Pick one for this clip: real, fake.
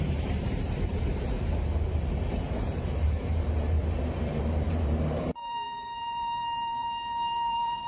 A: fake